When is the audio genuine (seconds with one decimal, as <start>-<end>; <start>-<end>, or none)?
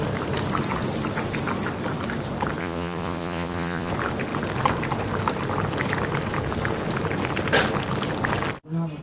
0.0-2.6; 3.9-9.0